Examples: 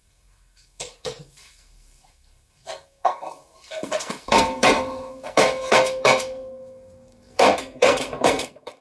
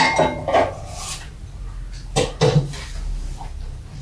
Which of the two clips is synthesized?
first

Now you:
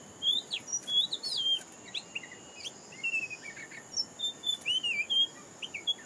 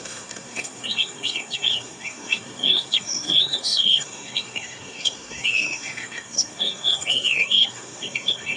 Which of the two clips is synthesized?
second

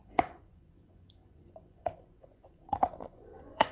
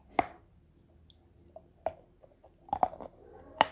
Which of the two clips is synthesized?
first